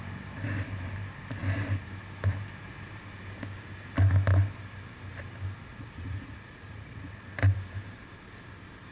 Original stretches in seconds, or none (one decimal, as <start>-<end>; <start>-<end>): 0.0-5.7; 7.2-8.9